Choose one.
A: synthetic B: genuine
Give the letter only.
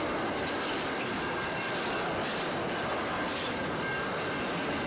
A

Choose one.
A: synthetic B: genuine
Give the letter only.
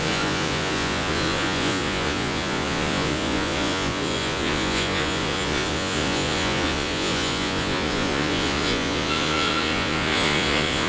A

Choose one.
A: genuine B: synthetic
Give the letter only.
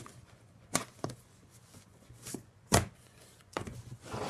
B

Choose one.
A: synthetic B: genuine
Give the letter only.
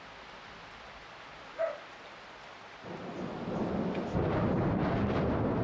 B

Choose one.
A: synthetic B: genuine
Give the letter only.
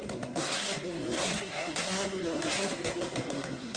A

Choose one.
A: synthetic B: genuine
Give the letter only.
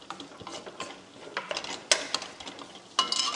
B